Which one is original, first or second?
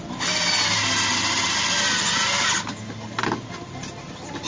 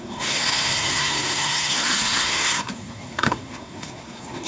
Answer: first